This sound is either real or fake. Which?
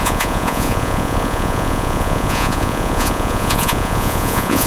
fake